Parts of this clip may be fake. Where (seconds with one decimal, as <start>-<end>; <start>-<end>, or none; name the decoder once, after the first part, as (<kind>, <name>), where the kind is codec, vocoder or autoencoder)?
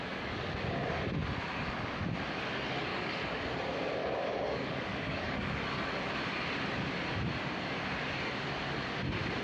2.9-3.4 (codec, DAC); 4.0-5.8